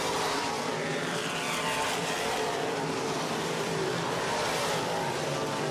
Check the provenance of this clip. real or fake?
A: fake